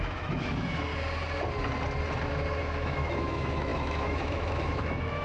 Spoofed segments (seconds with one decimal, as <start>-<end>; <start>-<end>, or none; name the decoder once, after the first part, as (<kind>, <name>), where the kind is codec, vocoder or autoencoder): 0.0-0.9 (autoencoder, DAC-VAE); 2.6-5.2

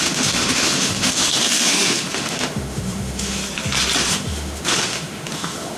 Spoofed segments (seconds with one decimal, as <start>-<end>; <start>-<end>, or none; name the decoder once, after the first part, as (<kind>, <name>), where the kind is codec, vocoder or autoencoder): 0.0-3.4 (autoencoder, DAC-VAE); 4.1-5.8

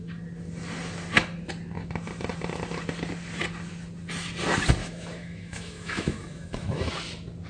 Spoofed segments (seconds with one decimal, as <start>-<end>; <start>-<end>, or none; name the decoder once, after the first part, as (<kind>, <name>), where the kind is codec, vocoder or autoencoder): 4.8-6.9 (autoencoder, DAC-VAE)

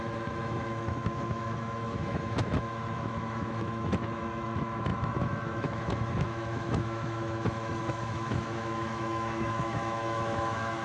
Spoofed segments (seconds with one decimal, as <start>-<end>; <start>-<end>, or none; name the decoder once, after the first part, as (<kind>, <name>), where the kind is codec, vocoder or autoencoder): 0.0-10.8 (autoencoder, DAC-VAE)

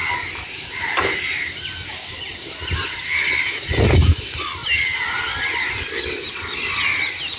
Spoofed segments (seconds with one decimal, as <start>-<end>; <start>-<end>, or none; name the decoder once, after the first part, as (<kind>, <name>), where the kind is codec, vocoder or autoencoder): none